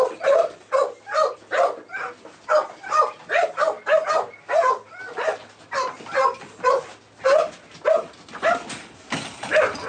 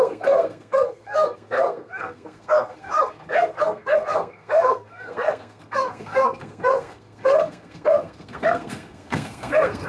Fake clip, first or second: second